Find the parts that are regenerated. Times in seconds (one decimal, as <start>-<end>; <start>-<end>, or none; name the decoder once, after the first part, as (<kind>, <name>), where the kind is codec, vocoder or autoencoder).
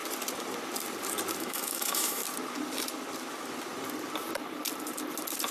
1.4-2.2 (autoencoder, DAC-VAE)